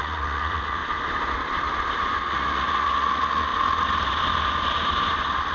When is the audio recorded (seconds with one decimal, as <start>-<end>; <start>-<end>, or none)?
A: 0.8-2.3; 3.5-5.5